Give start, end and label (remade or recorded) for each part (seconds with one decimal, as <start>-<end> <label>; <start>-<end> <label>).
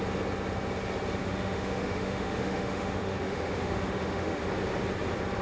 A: 0.0-1.2 recorded; 1.2-4.4 remade; 4.4-5.4 recorded